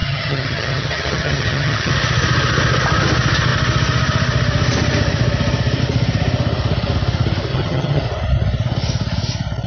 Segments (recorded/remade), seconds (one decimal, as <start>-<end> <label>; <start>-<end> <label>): 0.0-1.9 remade; 1.9-7.5 recorded; 7.5-8.0 remade; 8.0-9.7 recorded